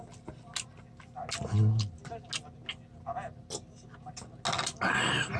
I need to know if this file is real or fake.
real